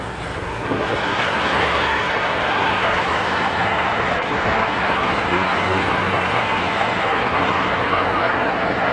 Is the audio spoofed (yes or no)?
yes